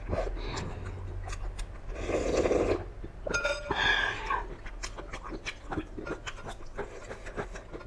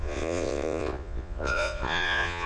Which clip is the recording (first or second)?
first